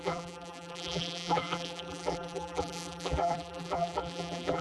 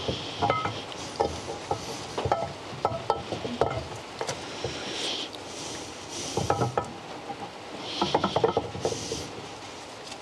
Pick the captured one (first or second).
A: second